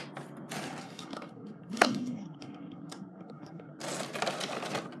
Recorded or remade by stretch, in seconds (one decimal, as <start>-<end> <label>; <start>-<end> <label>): 0.0-0.8 recorded; 0.8-3.8 remade; 3.8-5.0 recorded